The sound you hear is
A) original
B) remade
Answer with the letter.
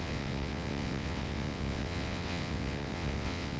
B